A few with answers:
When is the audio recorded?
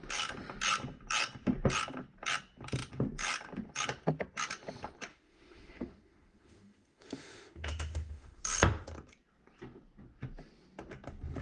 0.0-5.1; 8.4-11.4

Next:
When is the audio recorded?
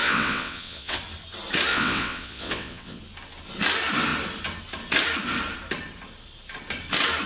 1.0-1.7; 3.0-7.3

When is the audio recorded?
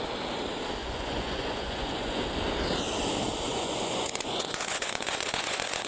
0.0-0.8; 2.2-3.5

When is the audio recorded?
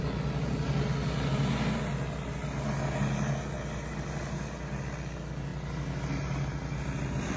0.0-7.4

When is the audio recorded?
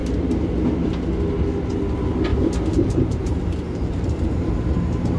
0.0-2.3; 4.7-5.2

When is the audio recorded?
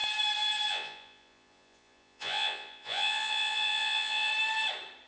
0.0-0.7; 4.3-5.1